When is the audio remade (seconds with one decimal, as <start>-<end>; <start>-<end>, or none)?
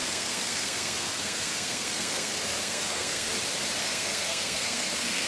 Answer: 0.0-3.3; 3.8-5.3